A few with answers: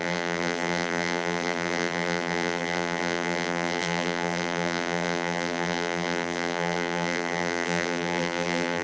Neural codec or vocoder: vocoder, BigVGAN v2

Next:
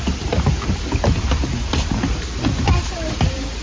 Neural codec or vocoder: none